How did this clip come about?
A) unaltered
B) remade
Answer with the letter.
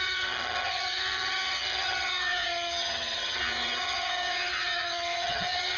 B